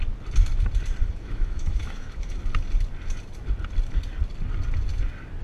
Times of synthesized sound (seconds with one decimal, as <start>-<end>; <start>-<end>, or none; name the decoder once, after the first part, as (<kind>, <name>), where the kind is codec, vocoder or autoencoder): 1.0-2.4 (autoencoder, DAC-VAE)